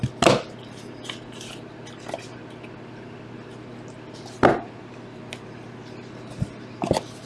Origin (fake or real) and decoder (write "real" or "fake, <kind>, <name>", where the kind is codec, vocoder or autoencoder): real